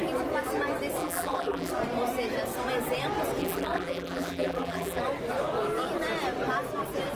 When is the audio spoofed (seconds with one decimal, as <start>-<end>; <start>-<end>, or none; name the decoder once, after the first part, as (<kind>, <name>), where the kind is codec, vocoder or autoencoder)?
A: 1.0-1.7 (vocoder, BigVGAN v2); 3.4-5.0